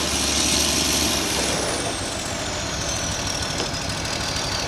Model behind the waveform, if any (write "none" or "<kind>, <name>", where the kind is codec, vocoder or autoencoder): none